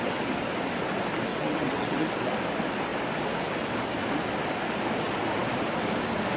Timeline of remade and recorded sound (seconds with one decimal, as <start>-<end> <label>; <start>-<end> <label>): 0.0-1.3 recorded; 1.3-2.1 remade; 2.1-6.4 recorded